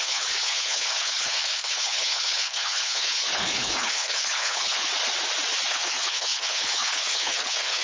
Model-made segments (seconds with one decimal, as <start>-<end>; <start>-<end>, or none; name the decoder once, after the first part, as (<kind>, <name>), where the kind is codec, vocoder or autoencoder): 0.0-4.9 (codec, HILCodec); 5.7-7.8